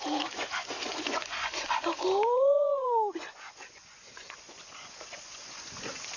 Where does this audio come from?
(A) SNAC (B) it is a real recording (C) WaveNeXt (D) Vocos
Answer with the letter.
D